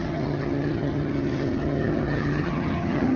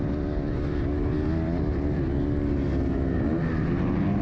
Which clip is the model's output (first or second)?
first